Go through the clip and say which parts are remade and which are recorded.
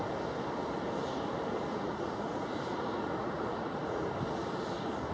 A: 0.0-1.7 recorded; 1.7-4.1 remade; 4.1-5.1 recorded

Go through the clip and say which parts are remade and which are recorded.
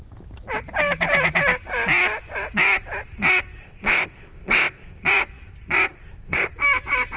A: 0.0-3.6 recorded; 3.6-5.0 remade; 5.0-5.9 recorded; 5.9-6.5 remade; 6.5-7.2 recorded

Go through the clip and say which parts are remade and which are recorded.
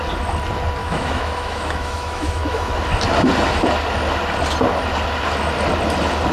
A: 0.0-0.8 recorded; 0.8-2.7 remade; 2.7-6.3 recorded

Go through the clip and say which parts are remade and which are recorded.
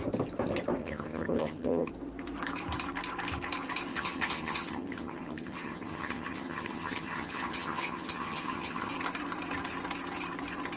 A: 0.0-0.8 recorded; 0.8-1.9 remade; 1.9-3.9 recorded; 3.9-8.9 remade; 8.9-10.8 recorded